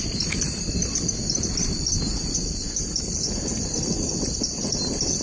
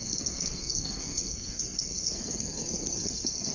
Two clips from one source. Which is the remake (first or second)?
second